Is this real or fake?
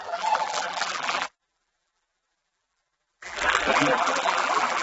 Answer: fake